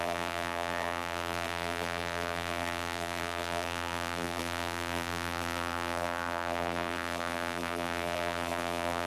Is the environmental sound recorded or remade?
remade